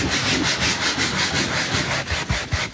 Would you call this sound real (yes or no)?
yes